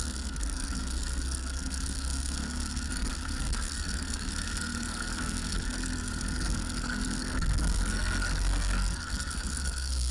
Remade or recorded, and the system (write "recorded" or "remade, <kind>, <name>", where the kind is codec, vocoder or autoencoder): remade, codec, SNAC